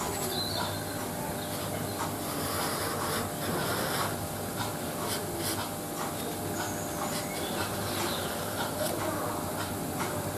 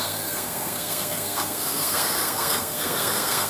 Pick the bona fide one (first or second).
first